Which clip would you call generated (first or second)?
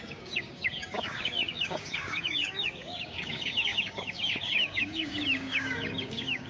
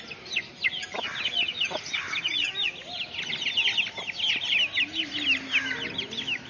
first